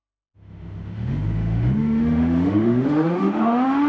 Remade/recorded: remade